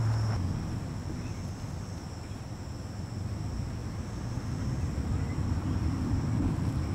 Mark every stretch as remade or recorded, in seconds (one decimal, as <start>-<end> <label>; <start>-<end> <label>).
0.0-6.9 recorded